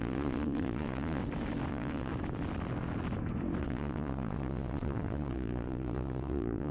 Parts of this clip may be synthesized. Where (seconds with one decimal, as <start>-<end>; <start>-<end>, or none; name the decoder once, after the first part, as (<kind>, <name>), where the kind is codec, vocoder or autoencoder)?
0.0-1.2 (vocoder, Vocos); 1.7-2.1; 3.6-6.7